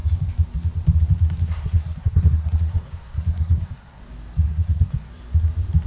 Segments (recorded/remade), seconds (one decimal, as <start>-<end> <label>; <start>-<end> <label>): 0.0-1.4 recorded; 1.4-4.0 remade; 4.0-4.5 recorded; 4.5-5.1 remade; 5.1-5.9 recorded